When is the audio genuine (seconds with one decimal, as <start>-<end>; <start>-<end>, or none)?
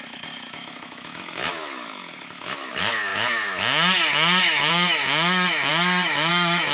none